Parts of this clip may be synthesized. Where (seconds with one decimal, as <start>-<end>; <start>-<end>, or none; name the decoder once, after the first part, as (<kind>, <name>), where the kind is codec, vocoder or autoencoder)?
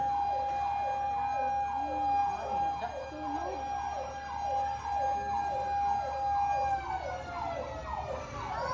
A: none